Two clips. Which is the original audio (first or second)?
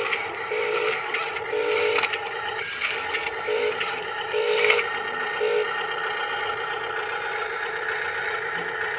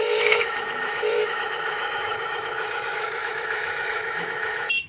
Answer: first